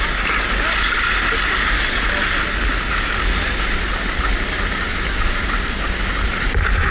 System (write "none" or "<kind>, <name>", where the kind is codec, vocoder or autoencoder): none